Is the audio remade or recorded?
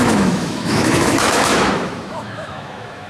remade